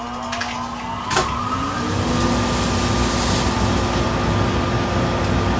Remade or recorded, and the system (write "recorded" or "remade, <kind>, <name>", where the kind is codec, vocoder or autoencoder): recorded